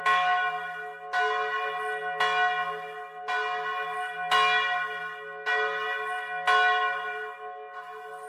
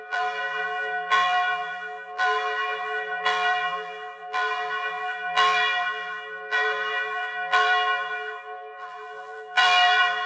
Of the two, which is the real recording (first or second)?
first